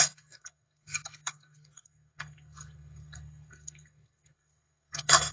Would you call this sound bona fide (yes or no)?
no